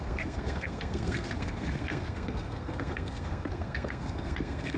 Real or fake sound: fake